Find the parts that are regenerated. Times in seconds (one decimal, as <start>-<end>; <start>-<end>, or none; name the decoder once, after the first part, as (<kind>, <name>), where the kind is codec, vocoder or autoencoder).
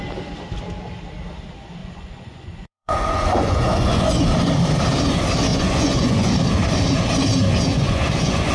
1.8-4.2 (vocoder, Vocos); 5.5-6.3; 7.7-8.5